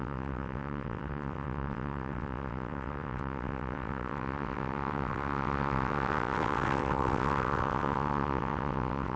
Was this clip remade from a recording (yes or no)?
yes